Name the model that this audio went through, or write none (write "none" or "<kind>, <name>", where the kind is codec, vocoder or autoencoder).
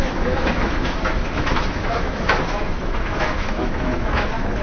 autoencoder, DAC-VAE